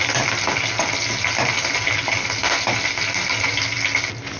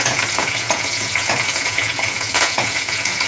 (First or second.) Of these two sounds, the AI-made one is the second